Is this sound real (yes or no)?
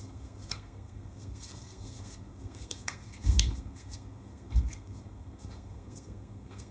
no